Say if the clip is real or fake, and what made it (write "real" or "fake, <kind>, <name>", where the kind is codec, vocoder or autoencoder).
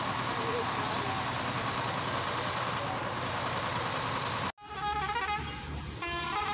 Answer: real